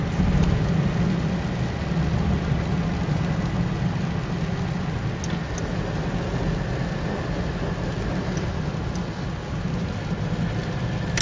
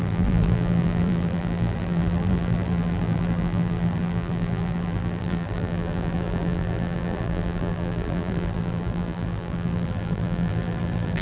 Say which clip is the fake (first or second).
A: second